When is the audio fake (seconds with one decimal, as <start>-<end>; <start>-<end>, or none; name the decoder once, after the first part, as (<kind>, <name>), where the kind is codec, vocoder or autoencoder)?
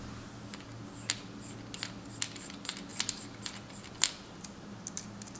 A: 2.9-4.1 (vocoder, BigVGAN v2)